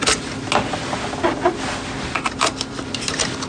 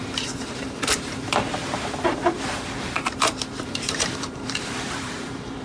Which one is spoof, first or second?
second